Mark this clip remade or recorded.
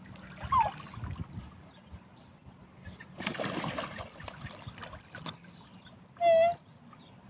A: recorded